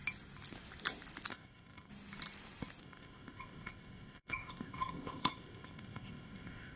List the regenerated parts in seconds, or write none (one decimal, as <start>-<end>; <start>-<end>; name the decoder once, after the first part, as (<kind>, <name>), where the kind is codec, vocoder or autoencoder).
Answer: 1.3-1.9 (codec, ZipCodec); 2.8-6.8